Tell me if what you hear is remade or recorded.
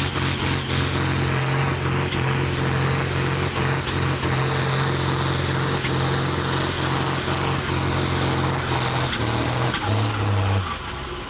recorded